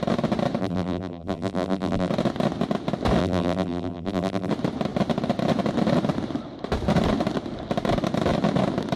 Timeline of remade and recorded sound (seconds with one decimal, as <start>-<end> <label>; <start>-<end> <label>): 0.0-0.6 recorded; 0.6-2.1 remade; 2.1-3.2 recorded; 3.2-4.5 remade; 4.5-9.0 recorded

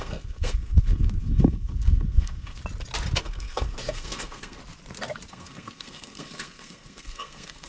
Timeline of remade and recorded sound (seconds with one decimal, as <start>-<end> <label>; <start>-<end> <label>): 0.0-2.6 remade; 2.6-3.2 recorded; 3.2-4.6 remade; 4.6-5.3 recorded; 5.3-7.7 remade

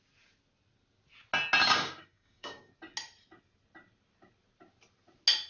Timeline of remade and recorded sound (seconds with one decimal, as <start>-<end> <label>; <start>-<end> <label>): 0.0-1.6 recorded; 1.6-2.7 remade; 2.7-5.5 recorded

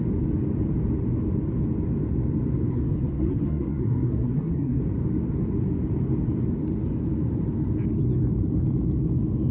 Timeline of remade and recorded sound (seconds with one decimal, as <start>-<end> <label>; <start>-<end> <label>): 0.0-2.7 recorded; 2.7-4.8 remade; 4.8-9.5 recorded

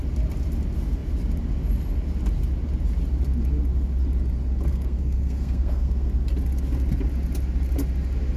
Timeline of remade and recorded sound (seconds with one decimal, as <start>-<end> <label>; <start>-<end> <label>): 0.0-4.7 recorded; 4.7-6.1 remade; 6.1-8.4 recorded

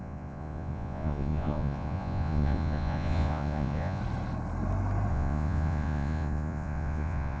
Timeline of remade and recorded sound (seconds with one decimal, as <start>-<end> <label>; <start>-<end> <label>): 0.0-4.0 remade; 4.0-5.1 recorded; 5.1-7.4 remade

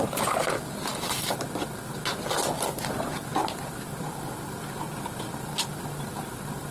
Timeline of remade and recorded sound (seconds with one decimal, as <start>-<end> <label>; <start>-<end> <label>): 0.0-6.7 recorded

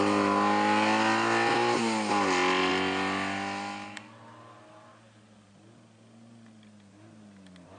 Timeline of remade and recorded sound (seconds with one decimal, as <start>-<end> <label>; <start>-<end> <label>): 0.0-7.8 recorded